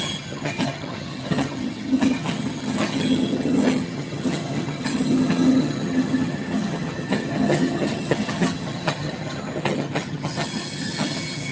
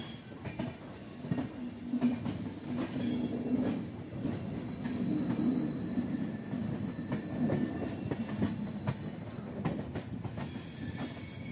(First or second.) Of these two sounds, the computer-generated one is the first